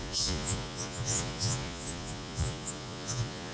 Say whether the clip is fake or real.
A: fake